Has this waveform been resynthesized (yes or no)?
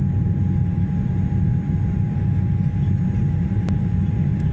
no